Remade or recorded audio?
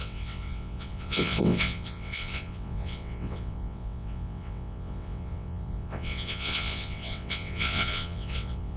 remade